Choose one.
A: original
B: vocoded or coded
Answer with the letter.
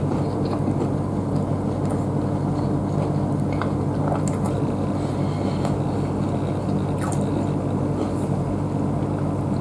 A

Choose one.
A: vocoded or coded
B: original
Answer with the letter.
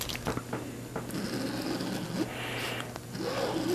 B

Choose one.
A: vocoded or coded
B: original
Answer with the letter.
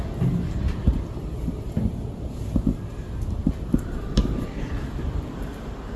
B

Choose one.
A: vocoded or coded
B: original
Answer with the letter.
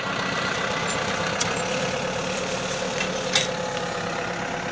B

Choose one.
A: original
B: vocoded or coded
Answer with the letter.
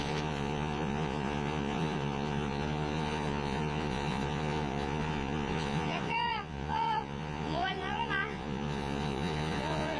B